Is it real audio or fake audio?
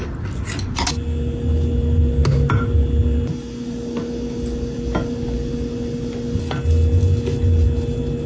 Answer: real